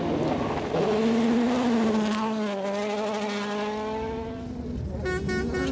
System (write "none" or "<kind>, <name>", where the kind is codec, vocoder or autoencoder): none